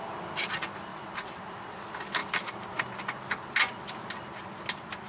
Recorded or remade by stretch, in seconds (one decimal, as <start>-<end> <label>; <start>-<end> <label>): 0.0-0.5 remade; 0.5-2.2 recorded; 2.2-2.8 remade; 2.8-5.1 recorded